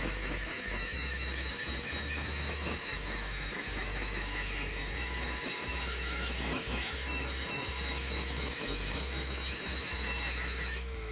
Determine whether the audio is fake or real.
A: fake